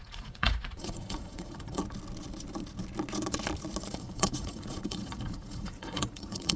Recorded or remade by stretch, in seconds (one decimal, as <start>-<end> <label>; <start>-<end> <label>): 0.0-1.8 remade; 1.8-3.9 recorded; 3.9-6.6 remade